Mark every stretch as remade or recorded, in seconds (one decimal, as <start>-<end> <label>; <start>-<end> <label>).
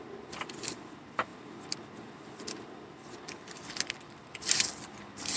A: 0.0-5.4 recorded